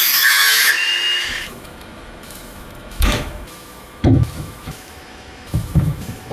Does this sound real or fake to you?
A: fake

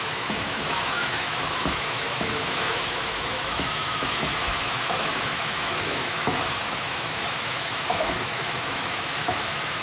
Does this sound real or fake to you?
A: fake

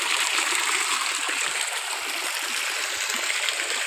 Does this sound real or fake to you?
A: real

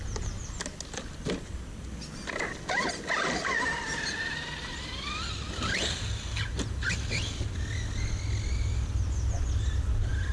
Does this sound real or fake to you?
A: real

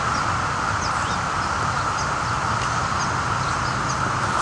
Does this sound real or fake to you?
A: real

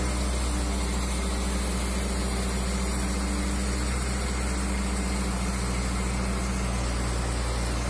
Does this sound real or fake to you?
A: real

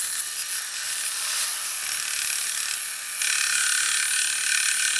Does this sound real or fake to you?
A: real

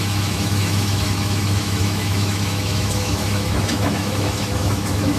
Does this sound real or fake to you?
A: fake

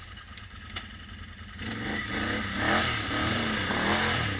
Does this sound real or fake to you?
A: real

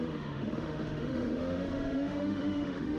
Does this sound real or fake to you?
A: fake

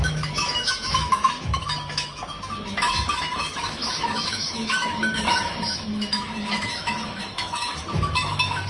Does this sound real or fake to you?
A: fake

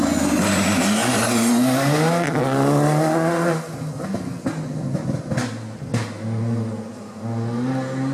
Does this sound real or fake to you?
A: real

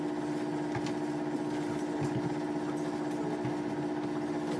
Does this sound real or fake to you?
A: real